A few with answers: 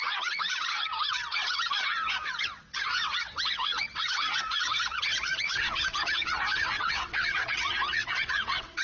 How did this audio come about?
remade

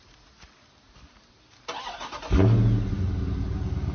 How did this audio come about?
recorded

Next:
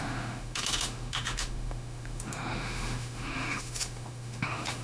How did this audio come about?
remade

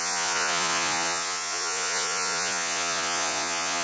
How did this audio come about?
remade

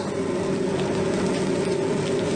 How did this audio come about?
recorded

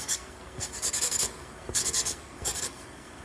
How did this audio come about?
remade